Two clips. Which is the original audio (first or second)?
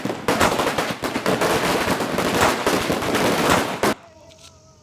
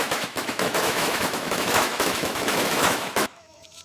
first